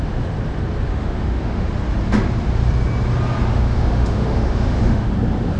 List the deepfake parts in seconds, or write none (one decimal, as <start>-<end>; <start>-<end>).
0.9-1.7; 3.5-5.1